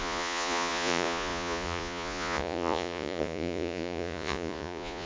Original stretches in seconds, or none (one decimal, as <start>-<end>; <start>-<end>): none